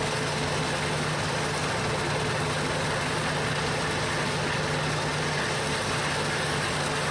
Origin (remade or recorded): recorded